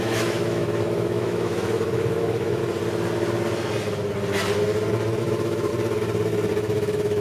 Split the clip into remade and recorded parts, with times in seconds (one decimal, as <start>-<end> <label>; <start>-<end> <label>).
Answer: 0.0-2.6 remade; 2.6-5.2 recorded; 5.2-5.7 remade; 5.7-6.5 recorded; 6.5-7.2 remade